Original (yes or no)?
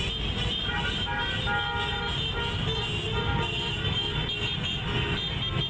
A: yes